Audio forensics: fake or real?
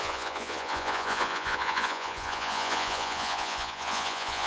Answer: fake